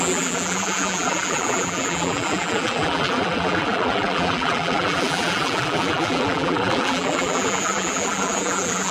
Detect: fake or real fake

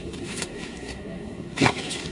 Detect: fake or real fake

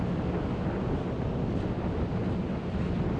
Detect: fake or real real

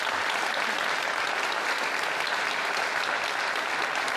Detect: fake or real real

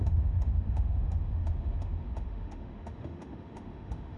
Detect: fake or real fake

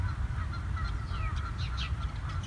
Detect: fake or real real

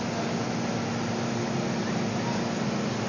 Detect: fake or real real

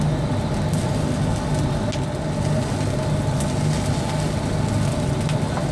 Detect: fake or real real